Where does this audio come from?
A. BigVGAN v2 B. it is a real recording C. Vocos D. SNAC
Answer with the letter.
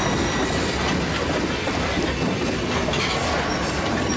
B